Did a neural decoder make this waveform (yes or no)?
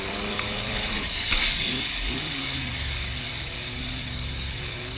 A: yes